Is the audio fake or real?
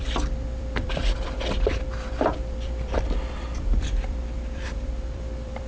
fake